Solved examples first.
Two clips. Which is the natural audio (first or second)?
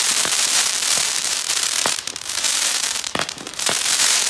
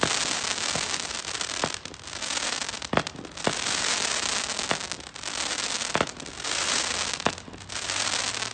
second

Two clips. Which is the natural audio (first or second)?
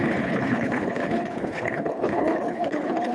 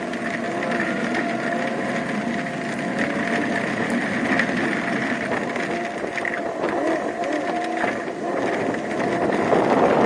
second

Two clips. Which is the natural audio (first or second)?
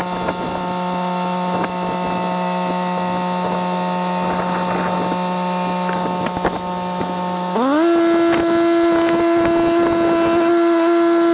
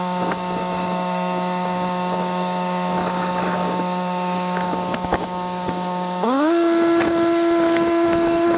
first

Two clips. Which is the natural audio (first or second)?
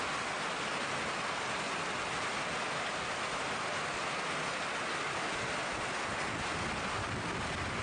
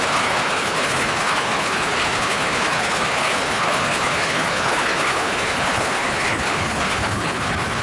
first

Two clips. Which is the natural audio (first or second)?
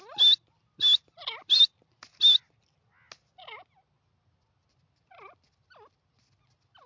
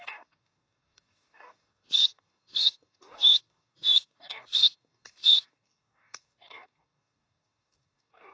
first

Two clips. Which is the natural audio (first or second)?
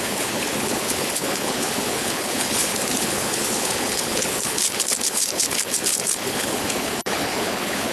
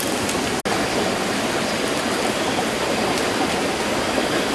second